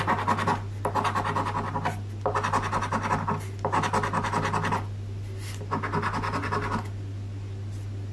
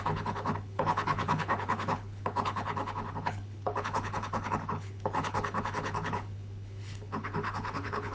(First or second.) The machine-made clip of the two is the second